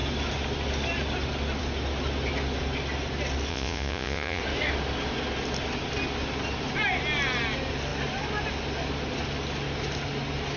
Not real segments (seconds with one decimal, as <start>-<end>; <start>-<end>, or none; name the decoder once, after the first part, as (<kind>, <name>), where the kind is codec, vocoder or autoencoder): 3.5-4.4 (vocoder, Vocos)